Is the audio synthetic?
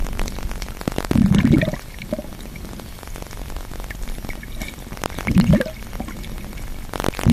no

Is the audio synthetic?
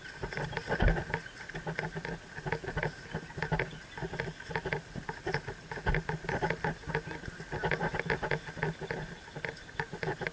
no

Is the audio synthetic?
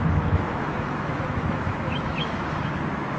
yes